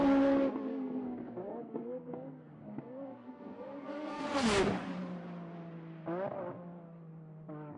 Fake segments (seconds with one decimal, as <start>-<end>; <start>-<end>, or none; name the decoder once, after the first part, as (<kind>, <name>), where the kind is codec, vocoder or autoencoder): 0.7-4.2 (codec, SNAC)